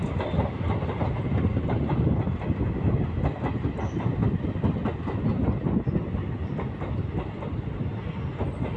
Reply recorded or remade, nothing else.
recorded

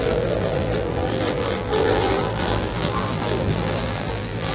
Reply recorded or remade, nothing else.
remade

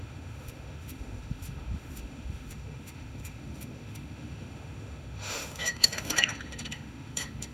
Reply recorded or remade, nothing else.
remade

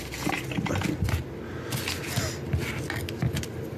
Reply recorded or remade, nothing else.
recorded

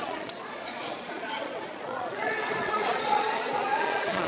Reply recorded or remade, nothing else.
remade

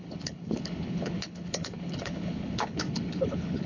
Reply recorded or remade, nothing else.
remade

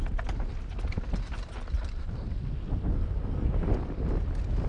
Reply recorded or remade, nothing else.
recorded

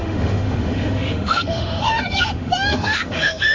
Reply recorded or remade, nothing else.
remade